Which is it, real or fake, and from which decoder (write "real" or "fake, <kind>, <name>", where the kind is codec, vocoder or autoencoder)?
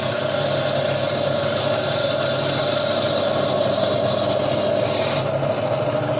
real